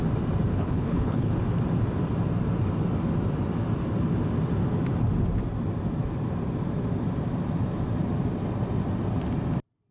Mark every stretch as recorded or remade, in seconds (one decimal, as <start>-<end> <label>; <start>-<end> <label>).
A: 0.0-0.5 recorded; 0.5-1.3 remade; 1.3-9.9 recorded